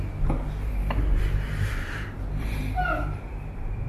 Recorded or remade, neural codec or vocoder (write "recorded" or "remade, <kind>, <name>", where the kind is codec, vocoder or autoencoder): remade, vocoder, BigVGAN v2